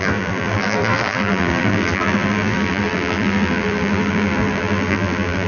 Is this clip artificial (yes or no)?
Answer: yes